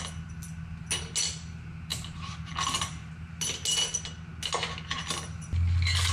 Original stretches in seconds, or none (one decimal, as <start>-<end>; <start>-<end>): 0.0-1.9; 3.1-6.1